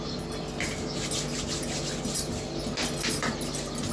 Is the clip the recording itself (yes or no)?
yes